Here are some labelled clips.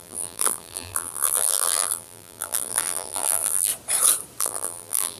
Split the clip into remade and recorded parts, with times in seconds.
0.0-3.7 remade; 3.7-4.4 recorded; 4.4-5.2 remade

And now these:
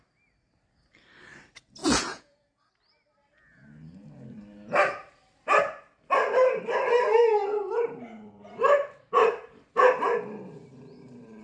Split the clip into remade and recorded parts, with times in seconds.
0.0-1.8 recorded; 1.8-2.7 remade; 2.7-11.4 recorded

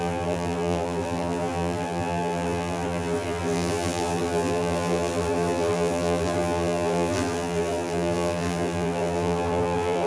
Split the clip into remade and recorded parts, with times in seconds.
0.0-10.1 remade

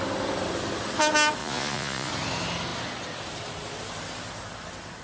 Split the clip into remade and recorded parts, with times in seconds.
0.0-1.4 recorded; 1.4-2.1 remade; 2.1-5.0 recorded